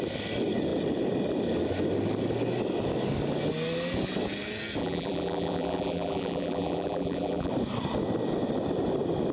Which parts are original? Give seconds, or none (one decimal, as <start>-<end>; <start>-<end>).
0.0-4.8; 7.5-9.3